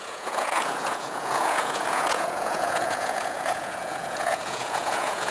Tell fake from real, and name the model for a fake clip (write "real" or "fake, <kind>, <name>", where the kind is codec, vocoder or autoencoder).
fake, vocoder, Vocos